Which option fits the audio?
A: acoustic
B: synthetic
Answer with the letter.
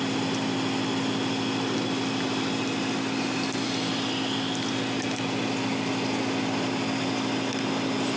A